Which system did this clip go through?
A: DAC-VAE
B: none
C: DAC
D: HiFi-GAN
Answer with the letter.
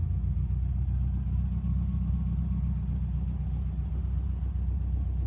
B